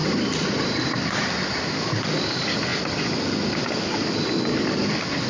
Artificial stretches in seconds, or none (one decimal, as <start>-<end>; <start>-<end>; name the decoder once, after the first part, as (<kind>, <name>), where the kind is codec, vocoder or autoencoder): none